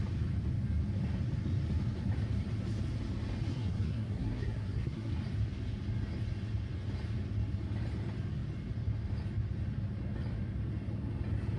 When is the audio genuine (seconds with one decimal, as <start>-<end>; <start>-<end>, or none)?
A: 0.0-3.5; 5.1-11.6